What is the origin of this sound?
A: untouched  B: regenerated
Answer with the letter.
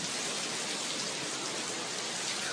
A